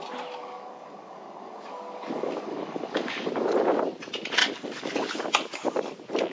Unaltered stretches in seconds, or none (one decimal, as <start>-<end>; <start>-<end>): 0.0-0.4; 3.3-4.4; 5.1-6.3